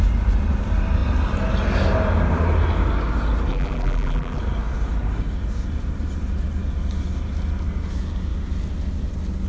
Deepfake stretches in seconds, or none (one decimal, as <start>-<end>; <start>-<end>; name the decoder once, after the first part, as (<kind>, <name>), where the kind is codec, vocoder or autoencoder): 3.5-4.4 (vocoder, BigVGAN v2)